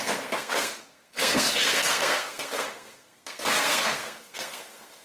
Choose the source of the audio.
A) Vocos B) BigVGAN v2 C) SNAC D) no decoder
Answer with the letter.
C